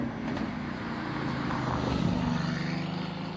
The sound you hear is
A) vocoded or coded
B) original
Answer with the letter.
B